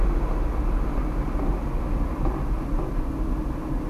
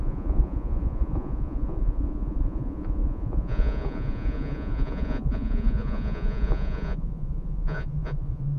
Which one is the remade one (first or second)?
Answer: second